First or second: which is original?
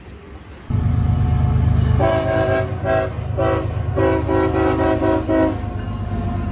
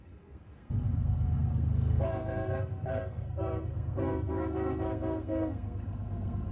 first